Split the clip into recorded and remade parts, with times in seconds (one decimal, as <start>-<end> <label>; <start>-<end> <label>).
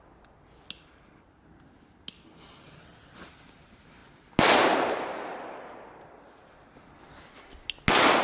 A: 0.0-8.2 recorded